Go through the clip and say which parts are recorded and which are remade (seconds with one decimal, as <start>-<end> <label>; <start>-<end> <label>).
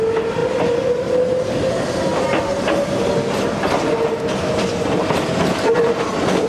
0.0-6.5 recorded